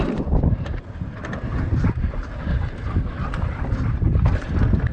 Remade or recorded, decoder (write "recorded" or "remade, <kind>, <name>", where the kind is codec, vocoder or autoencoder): remade, vocoder, BigVGAN v2